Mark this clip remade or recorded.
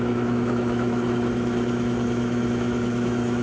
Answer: remade